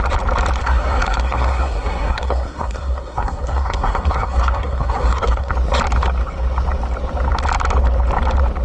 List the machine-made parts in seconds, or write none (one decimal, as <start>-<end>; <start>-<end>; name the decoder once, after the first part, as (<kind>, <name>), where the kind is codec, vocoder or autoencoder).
0.6-5.5 (codec, SNAC)

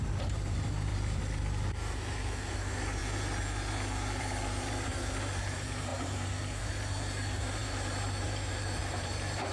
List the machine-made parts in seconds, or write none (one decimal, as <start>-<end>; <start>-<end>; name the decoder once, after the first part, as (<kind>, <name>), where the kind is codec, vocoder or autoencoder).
0.0-0.9 (vocoder, BigVGAN v2); 1.5-3.0; 4.2-9.5